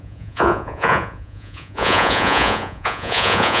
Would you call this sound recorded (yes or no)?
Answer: no